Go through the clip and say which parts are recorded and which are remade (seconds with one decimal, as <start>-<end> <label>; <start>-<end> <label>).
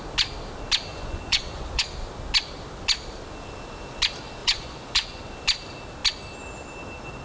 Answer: 0.0-0.9 recorded; 0.9-1.8 remade; 1.8-4.4 recorded; 4.4-5.2 remade; 5.2-7.2 recorded